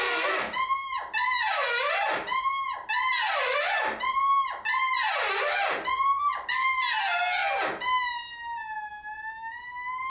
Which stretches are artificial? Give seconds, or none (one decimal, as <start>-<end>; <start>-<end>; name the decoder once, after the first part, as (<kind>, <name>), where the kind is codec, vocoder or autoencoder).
none

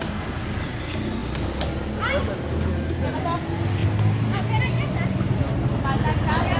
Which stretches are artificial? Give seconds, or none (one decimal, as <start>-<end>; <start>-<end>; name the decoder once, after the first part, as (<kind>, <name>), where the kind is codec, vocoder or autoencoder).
none

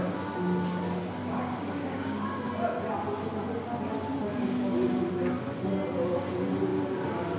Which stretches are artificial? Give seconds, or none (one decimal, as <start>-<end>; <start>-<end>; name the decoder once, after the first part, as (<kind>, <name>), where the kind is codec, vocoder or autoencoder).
1.2-2.5 (codec, DAC)